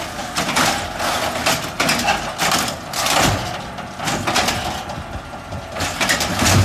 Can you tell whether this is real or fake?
real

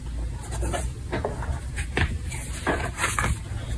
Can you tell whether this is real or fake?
real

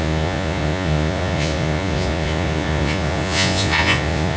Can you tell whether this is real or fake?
fake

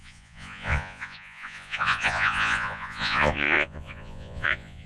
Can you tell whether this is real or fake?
fake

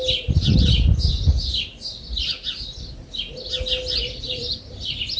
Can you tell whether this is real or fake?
real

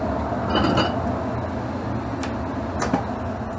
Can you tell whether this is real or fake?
real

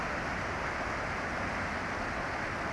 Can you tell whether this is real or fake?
real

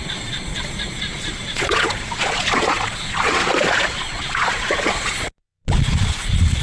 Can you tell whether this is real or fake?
fake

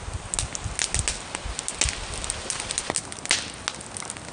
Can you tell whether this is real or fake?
real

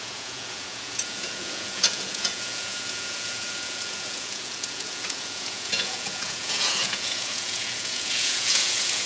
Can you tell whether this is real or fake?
fake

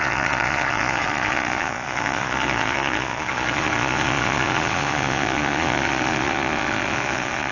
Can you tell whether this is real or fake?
fake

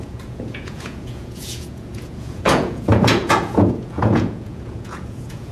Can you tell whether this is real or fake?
fake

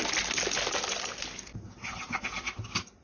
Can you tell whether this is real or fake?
real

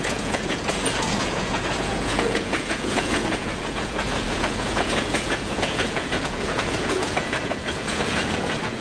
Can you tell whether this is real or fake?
fake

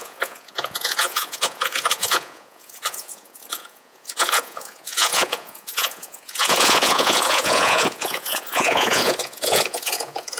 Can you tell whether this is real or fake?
fake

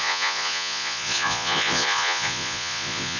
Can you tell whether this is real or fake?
fake